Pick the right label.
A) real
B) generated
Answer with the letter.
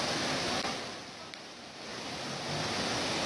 A